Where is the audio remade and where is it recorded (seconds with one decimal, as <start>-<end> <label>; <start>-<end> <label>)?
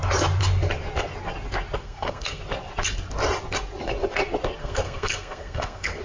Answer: 0.0-1.8 recorded; 1.8-2.4 remade; 2.4-4.6 recorded; 4.6-6.0 remade